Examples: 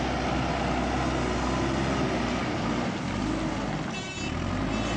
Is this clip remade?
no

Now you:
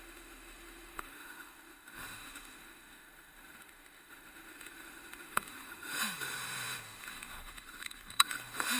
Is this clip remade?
yes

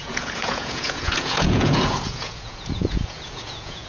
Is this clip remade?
yes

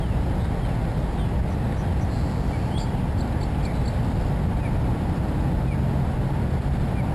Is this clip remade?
no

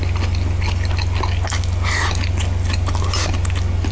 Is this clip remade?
no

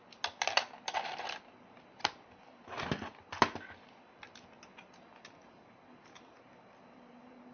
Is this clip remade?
no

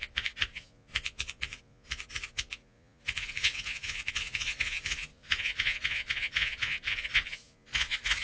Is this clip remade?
yes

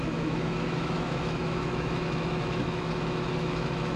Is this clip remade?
yes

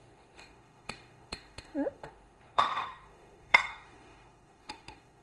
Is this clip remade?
yes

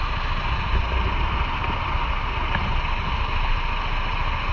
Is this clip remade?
no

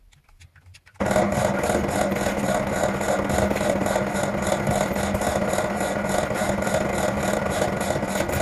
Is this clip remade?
no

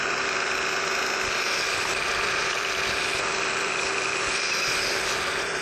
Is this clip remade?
no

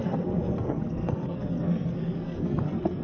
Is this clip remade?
yes